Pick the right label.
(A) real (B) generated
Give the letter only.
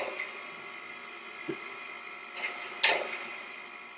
A